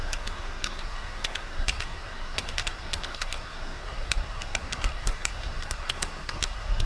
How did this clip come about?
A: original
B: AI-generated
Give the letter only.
B